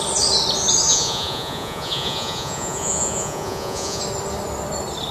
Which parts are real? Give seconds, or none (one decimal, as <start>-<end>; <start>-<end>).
0.0-0.9; 4.0-5.1